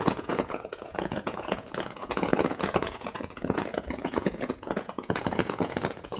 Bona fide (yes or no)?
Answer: no